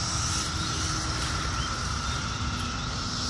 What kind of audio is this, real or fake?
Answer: real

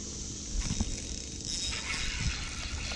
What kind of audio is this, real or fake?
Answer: real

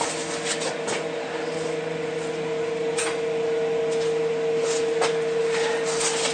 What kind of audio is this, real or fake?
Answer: real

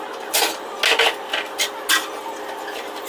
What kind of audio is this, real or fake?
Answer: real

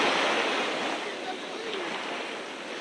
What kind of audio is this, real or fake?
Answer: real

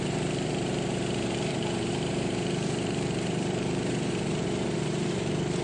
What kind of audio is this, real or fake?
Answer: fake